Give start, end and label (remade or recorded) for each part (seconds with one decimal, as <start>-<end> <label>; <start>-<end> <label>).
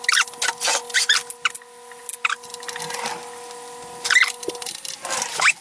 0.0-5.6 recorded